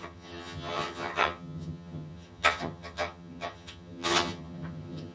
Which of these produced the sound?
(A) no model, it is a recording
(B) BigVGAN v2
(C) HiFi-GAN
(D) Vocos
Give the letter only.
C